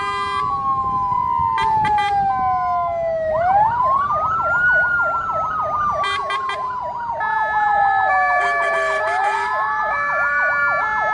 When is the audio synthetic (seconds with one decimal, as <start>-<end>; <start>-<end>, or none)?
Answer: 7.7-10.5